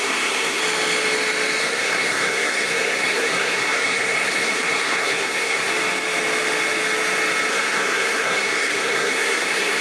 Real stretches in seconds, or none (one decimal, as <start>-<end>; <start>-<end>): 0.6-1.6; 5.7-7.5